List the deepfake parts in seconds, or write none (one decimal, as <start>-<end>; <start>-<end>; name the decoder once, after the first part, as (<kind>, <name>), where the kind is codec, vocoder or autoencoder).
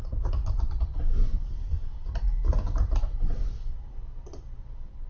none